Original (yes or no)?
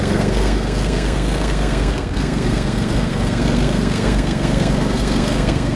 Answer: no